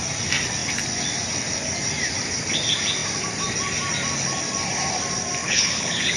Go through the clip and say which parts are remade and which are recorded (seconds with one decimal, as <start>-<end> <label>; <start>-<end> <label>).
0.0-5.4 recorded; 5.4-6.2 remade